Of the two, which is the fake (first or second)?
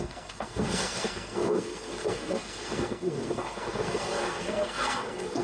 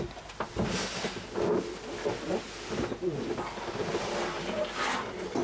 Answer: first